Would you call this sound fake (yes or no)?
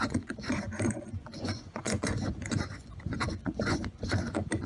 yes